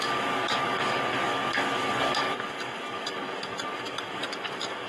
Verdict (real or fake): fake